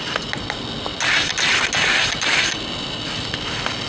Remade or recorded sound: recorded